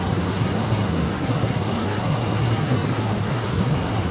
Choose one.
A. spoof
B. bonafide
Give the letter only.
A